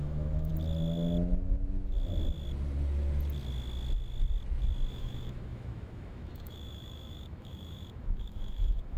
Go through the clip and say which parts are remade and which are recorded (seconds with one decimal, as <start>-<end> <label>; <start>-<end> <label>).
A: 0.0-0.5 remade; 0.5-4.9 recorded; 4.9-9.0 remade